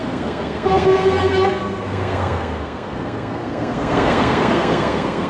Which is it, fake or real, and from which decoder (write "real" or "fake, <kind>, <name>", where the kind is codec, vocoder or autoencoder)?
fake, codec, SNAC